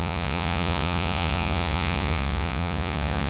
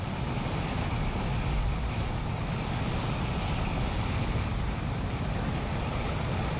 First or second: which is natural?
second